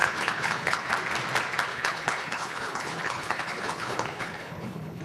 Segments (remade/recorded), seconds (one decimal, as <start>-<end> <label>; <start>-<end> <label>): 0.0-0.9 remade; 0.9-1.7 recorded; 1.7-5.0 remade